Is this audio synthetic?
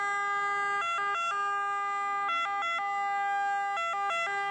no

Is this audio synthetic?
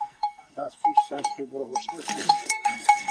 yes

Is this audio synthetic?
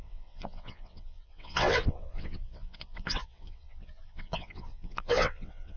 yes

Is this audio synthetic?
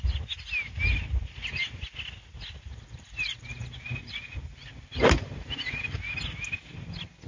no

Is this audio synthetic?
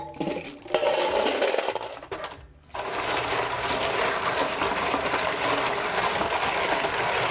no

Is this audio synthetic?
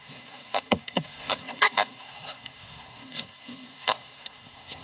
yes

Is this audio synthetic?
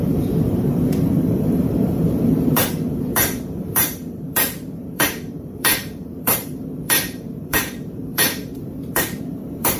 yes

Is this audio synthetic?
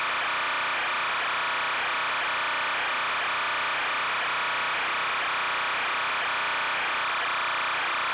no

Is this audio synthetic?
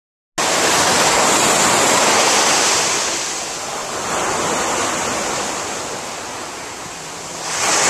no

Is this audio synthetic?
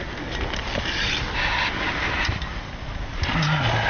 no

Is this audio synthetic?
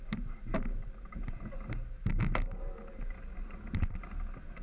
no